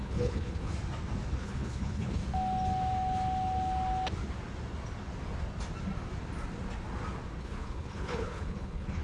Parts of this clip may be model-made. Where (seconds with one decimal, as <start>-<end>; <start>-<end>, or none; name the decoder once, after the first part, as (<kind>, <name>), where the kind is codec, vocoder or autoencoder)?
0.0-0.7 (codec, HILCodec); 1.3-2.2; 7.4-9.0

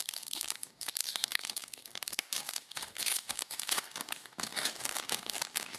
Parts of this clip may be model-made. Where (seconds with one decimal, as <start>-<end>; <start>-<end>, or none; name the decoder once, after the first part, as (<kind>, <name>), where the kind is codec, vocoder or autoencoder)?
0.0-5.8 (codec, DAC)

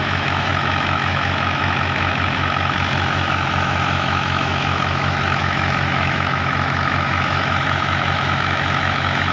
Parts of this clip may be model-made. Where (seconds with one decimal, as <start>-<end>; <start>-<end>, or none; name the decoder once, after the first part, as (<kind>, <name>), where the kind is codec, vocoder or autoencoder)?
0.0-9.3 (autoencoder, DAC-VAE)

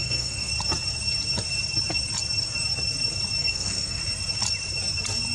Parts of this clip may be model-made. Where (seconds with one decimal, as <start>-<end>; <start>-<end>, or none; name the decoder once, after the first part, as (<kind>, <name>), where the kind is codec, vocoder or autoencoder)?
0.0-0.5 (codec, SNAC); 3.4-4.0

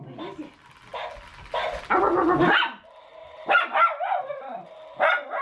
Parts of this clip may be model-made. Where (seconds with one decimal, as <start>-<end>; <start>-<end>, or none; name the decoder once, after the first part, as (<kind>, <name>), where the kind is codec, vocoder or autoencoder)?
3.1-4.7 (vocoder, BigVGAN v2)

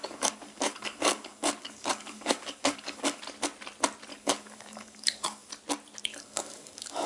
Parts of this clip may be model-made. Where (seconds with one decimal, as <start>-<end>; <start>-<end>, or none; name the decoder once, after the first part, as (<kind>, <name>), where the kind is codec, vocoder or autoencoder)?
0.0-3.2 (codec, DAC); 4.1-5.5; 6.1-7.1

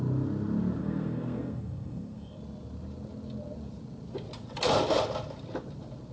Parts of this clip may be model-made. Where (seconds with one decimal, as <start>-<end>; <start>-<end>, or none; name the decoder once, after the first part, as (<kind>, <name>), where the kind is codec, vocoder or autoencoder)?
0.8-2.4 (codec, SNAC)